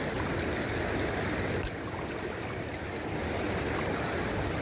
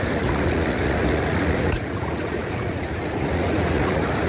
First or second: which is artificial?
second